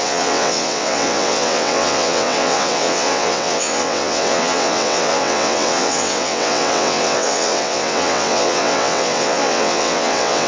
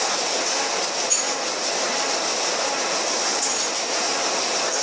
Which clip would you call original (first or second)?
second